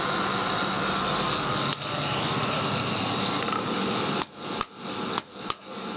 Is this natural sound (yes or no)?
yes